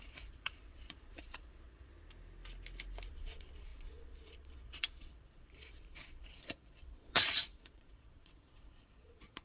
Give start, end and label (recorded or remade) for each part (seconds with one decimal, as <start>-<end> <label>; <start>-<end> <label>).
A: 0.0-1.9 remade; 1.9-3.1 recorded; 3.1-9.4 remade